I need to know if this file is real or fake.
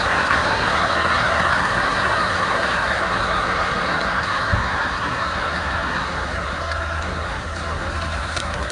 fake